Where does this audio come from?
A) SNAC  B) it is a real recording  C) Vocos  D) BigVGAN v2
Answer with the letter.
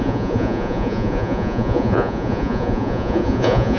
C